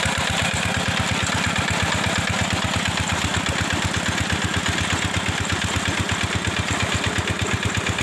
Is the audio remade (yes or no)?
no